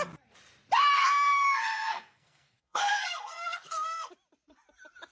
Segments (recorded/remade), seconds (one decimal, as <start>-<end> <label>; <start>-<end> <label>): 0.0-1.0 recorded; 1.0-4.1 remade; 4.1-5.1 recorded